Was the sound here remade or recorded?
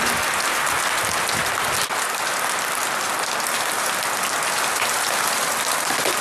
recorded